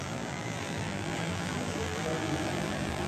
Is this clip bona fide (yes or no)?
no